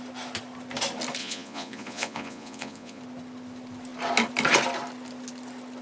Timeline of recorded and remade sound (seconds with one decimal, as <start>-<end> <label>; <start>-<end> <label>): 0.0-1.2 recorded; 1.2-3.0 remade; 3.0-5.8 recorded